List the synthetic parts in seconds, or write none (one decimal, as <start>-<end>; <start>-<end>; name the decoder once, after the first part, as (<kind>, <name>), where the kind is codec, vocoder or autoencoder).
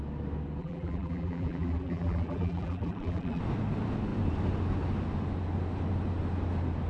0.6-3.4 (vocoder, BigVGAN v2)